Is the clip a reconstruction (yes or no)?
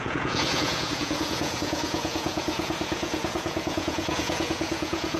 yes